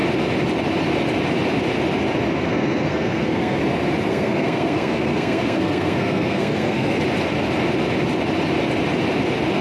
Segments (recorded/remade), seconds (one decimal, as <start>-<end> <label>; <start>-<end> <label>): 0.0-2.5 recorded; 2.5-3.6 remade; 3.6-4.1 recorded; 4.1-7.0 remade; 7.0-9.6 recorded